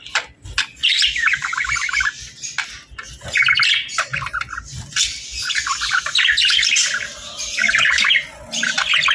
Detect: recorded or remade recorded